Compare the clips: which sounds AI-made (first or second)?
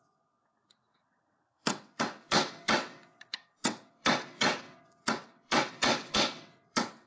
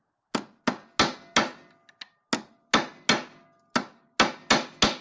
first